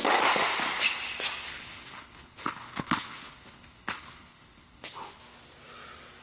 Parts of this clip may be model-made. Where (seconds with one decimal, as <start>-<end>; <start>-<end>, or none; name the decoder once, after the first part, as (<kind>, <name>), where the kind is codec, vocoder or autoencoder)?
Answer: 1.5-5.2 (codec, HILCodec)